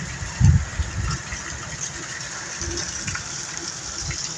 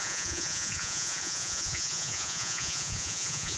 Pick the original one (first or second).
first